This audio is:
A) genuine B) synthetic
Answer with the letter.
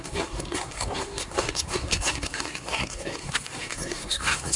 B